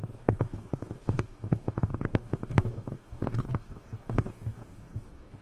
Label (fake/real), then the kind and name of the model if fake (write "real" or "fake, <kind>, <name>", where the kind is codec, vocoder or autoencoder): fake, codec, DAC